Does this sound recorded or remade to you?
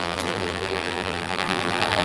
remade